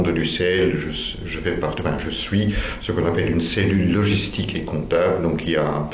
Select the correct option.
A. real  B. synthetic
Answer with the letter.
A